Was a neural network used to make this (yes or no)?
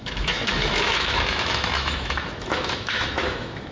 yes